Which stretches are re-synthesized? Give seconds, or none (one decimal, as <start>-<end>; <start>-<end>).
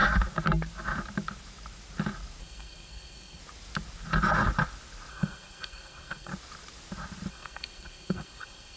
2.4-3.4; 5.1-6.3; 7.3-8.8